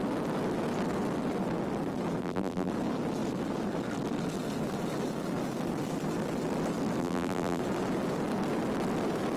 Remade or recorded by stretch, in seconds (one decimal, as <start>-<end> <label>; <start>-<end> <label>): 0.0-2.2 recorded; 2.2-2.7 remade; 2.7-7.0 recorded; 7.0-7.6 remade; 7.6-9.4 recorded